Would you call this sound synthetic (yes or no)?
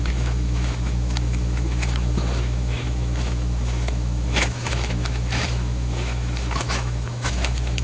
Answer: yes